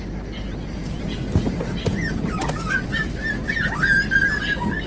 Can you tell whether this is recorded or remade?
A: recorded